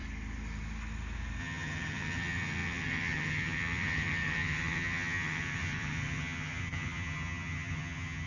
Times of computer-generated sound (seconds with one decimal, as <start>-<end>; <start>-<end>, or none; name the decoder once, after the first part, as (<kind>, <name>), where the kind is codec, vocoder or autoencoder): 1.4-8.3 (vocoder, HiFi-GAN)